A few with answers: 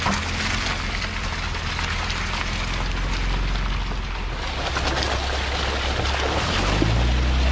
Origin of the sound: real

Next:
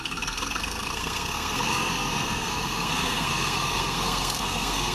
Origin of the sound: fake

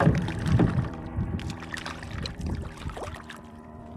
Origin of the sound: fake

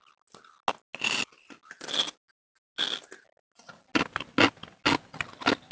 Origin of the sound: real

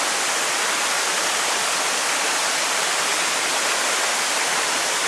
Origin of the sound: real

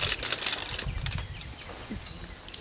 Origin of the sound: real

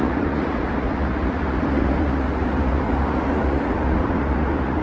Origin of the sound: fake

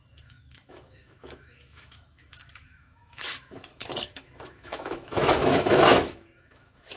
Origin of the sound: fake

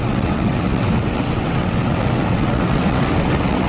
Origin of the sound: fake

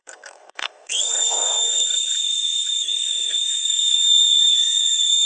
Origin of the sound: fake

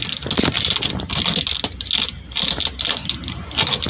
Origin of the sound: real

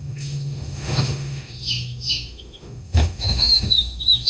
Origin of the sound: fake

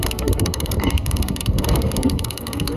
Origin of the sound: fake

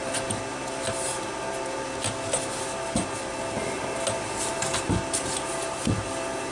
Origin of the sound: real